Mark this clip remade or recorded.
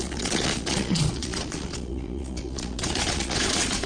remade